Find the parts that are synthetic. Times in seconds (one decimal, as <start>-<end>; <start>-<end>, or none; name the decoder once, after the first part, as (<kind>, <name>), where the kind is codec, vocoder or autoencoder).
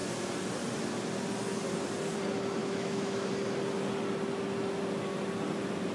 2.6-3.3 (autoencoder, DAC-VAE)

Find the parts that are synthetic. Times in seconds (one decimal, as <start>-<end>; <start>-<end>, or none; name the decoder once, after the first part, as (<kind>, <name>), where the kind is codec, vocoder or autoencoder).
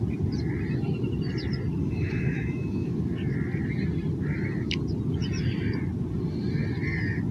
1.8-3.0 (autoencoder, DAC-VAE)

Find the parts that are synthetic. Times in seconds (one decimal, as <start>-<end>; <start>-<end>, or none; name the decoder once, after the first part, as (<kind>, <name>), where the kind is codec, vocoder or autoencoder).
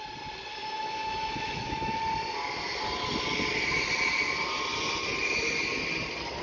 0.5-2.0 (autoencoder, DAC-VAE)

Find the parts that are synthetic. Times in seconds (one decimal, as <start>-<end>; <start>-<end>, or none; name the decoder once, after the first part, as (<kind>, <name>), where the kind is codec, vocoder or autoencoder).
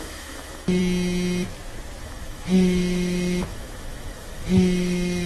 0.0-0.8 (autoencoder, DAC-VAE); 2.0-5.3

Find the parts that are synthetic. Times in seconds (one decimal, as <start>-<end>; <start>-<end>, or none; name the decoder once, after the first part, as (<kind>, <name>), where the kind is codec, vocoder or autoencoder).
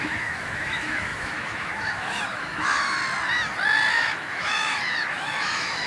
0.0-3.0 (autoencoder, DAC-VAE); 3.9-5.9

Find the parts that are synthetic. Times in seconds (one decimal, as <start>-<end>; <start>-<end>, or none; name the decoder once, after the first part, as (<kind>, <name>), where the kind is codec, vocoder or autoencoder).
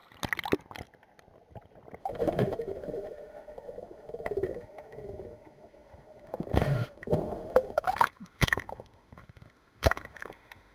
2.0-10.7 (autoencoder, DAC-VAE)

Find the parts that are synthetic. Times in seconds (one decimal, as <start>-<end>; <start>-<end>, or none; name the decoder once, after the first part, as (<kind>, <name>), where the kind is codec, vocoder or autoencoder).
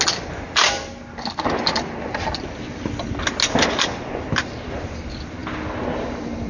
none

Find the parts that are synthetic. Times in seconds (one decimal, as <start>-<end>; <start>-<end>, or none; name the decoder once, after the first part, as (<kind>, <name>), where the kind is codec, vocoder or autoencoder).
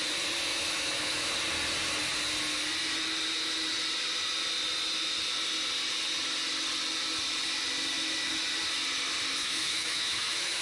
0.5-1.3 (autoencoder, DAC-VAE); 9.4-10.6